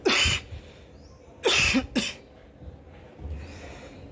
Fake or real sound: real